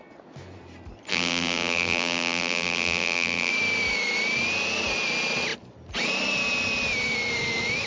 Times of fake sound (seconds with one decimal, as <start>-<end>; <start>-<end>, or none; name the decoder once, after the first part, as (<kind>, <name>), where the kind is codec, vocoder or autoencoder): 1.1-3.5 (vocoder, BigVGAN v2)